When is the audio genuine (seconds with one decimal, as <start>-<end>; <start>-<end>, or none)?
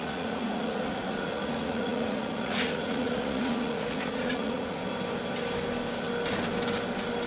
4.8-7.3